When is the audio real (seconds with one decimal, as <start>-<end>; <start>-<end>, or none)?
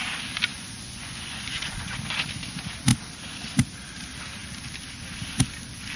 0.0-0.5; 2.0-6.0